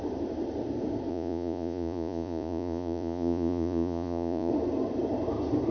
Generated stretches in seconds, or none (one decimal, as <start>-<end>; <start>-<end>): 1.1-4.5